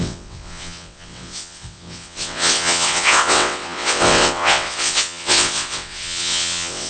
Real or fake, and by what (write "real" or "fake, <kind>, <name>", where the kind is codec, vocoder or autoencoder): fake, vocoder, WaveNeXt